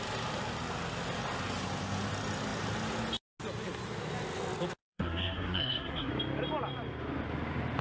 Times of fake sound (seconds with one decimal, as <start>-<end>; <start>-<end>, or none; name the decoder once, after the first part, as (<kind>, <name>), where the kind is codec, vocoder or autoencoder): 4.8-6.1 (codec, SNAC)